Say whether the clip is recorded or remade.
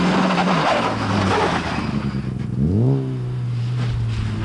recorded